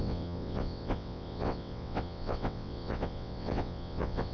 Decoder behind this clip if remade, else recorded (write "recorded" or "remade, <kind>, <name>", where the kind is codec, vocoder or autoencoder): remade, vocoder, WaveNeXt